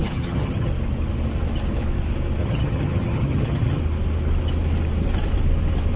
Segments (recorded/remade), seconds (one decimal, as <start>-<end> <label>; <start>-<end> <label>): 0.0-0.7 remade; 0.7-2.4 recorded; 2.4-3.8 remade; 3.8-6.0 recorded